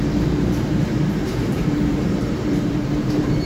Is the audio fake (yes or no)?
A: yes